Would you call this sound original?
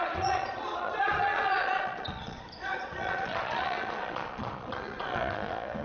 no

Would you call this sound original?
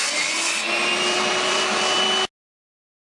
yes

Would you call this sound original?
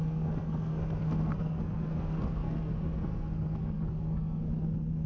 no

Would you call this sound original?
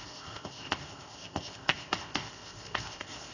no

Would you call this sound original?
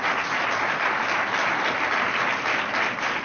yes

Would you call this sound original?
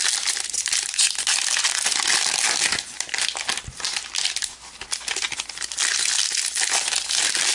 yes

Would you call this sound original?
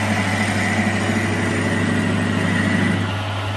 yes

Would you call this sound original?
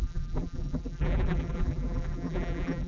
no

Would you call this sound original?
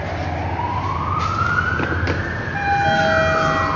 yes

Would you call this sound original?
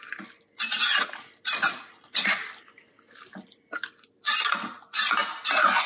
yes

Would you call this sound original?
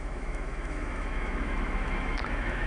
no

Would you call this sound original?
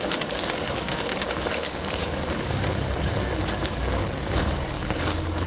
no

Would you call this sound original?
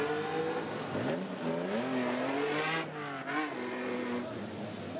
yes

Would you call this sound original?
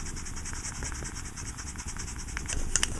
yes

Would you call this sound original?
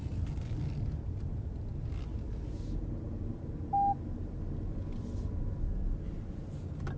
yes